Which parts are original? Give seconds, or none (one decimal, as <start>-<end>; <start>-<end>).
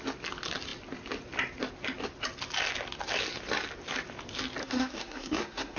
0.0-4.6